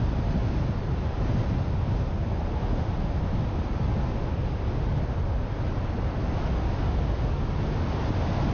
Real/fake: real